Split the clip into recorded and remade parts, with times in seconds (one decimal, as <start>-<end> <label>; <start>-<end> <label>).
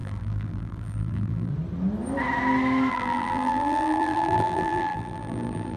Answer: 0.0-1.5 remade; 1.5-2.9 recorded; 2.9-5.8 remade